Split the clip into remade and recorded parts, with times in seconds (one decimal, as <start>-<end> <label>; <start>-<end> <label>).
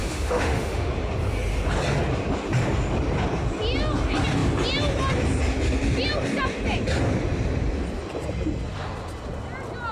0.0-0.9 remade; 0.9-9.9 recorded